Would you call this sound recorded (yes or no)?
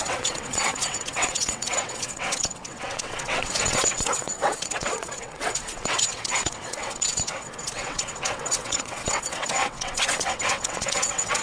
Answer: no